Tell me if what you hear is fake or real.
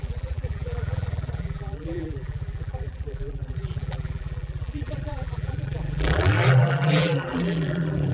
fake